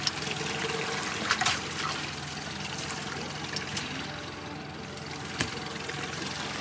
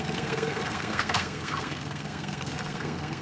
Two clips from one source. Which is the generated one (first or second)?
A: second